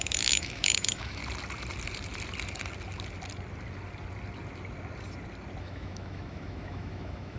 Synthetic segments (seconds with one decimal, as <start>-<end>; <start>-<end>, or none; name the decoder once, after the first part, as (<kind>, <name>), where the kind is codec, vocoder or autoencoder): 0.0-1.2 (autoencoder, DAC-VAE); 5.6-7.4